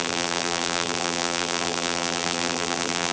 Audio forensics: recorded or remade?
remade